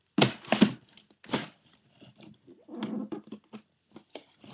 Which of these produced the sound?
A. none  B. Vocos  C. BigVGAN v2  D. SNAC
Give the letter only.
A